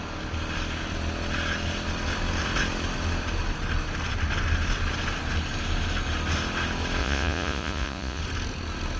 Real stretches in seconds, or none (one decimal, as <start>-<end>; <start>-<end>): 0.0-7.0; 8.2-9.0